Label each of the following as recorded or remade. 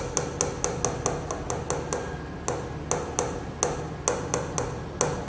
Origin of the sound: recorded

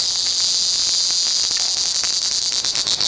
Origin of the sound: recorded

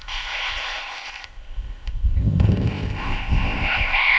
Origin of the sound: remade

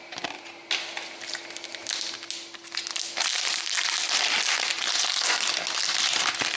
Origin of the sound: recorded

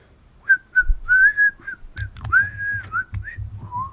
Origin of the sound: recorded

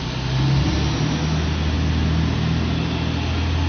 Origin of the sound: recorded